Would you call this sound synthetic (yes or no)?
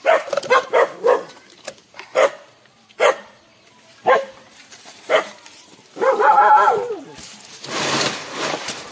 yes